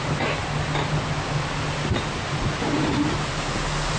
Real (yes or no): yes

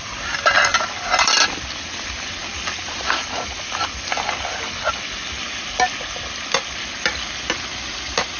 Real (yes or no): yes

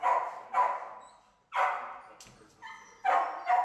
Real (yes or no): yes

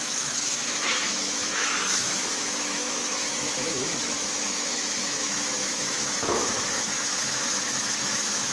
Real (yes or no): no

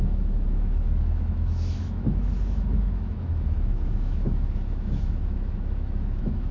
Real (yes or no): no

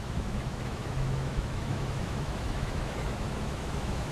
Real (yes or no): no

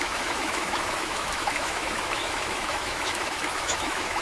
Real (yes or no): no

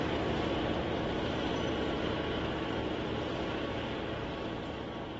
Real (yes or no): yes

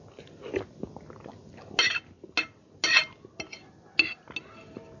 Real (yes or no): yes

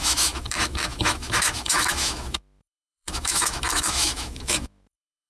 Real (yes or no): no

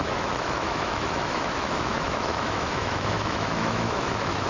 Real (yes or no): no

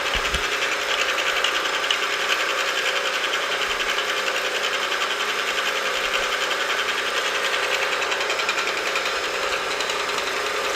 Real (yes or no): yes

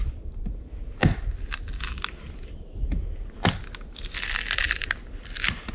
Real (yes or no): yes